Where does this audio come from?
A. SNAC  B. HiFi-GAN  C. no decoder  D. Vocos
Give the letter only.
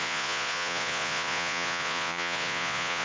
D